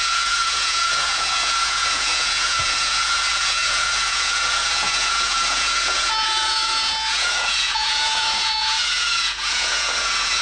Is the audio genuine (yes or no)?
no